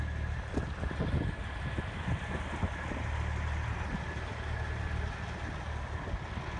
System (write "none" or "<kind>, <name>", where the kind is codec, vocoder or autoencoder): none